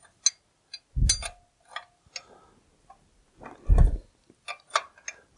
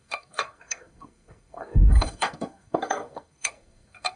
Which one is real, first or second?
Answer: first